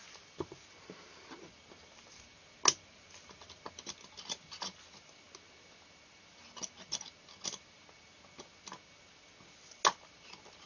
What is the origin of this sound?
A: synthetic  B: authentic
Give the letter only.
B